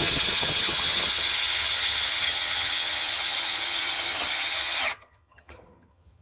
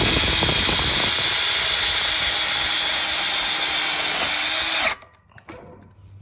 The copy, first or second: first